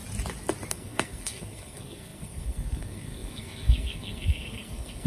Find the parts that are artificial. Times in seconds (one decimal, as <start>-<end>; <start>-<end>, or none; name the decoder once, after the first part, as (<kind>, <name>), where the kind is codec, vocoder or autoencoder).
0.7-5.1 (codec, SNAC)